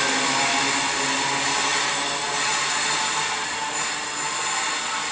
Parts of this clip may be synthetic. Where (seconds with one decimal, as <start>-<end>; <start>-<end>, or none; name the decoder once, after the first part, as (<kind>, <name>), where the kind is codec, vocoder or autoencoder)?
none